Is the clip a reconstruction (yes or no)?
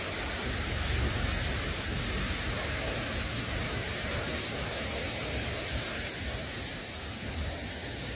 no